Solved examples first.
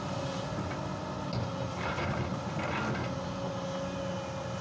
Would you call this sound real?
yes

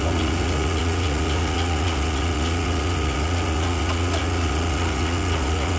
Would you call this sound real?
no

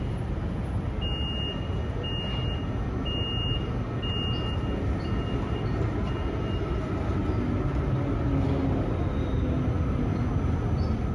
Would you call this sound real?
yes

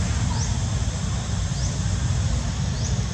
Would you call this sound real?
yes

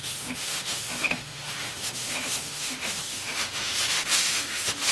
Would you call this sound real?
no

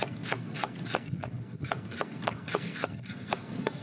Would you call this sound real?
no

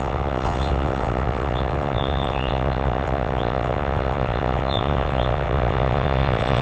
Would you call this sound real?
no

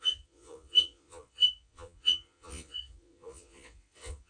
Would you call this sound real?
no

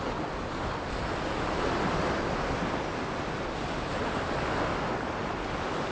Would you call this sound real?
yes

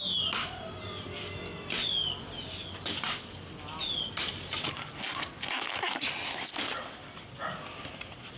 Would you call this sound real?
yes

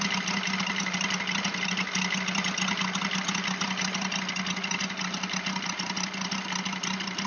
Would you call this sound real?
yes